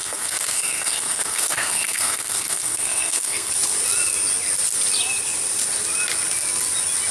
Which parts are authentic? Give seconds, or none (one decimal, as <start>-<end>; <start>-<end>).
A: 3.5-7.1